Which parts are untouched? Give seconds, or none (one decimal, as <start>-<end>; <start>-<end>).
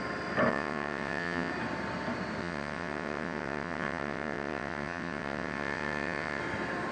0.0-0.5; 1.5-2.4; 6.4-6.9